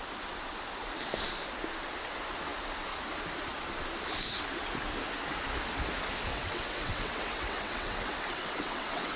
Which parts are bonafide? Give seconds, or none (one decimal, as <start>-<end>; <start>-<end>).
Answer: 0.0-6.3

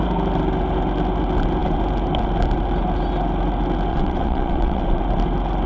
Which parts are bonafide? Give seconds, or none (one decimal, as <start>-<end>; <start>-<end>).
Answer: 0.0-3.9; 5.0-5.7

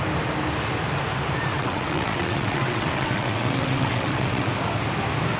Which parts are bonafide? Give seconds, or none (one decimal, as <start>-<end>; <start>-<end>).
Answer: 0.0-1.5; 4.5-5.4

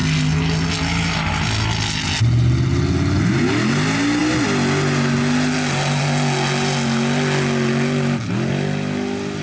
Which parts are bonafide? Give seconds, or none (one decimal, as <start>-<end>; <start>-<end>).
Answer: 0.0-9.4

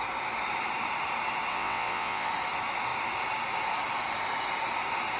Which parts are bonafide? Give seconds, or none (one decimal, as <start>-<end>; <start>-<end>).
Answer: 0.0-1.5; 2.3-5.2

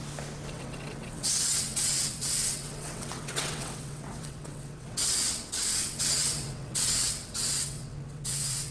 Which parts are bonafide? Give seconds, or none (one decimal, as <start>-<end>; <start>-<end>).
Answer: 0.0-0.5